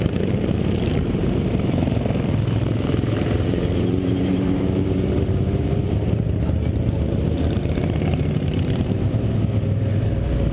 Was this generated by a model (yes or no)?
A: yes